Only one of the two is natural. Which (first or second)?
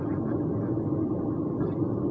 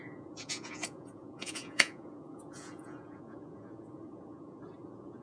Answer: first